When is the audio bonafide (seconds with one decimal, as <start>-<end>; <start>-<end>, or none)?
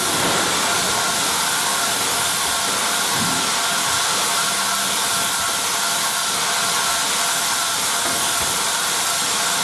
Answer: 0.0-9.6